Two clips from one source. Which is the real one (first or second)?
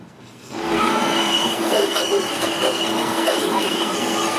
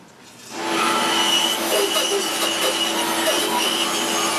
second